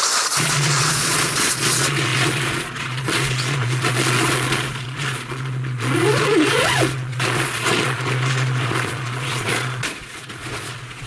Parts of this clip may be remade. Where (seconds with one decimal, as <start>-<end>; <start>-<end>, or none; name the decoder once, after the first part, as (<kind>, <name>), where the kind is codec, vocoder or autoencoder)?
0.0-11.1 (vocoder, Vocos)